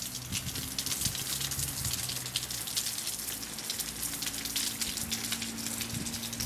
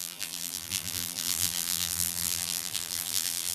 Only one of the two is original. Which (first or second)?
first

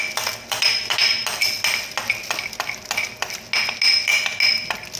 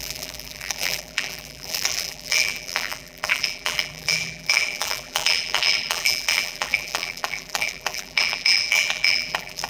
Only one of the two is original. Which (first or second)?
first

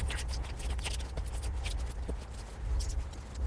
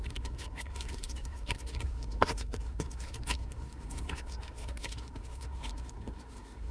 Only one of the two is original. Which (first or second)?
first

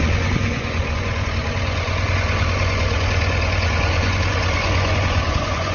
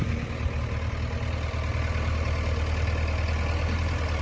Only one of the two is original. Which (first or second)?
second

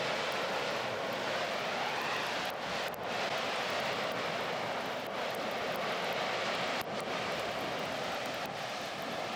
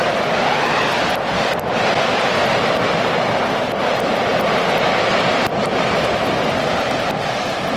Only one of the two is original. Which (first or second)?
first